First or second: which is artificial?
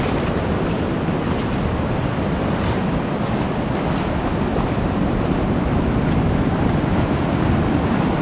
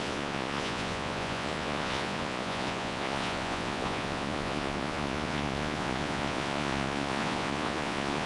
second